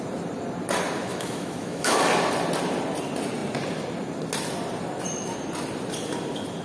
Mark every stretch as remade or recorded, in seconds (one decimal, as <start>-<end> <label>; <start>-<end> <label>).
0.0-1.1 recorded; 1.1-2.0 remade; 2.0-6.6 recorded